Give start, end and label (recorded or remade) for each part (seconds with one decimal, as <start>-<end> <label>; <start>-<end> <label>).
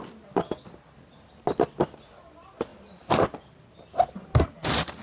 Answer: 0.0-5.0 recorded